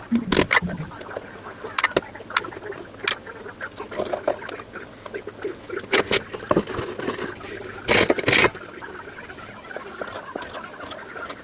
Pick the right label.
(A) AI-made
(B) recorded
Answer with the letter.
B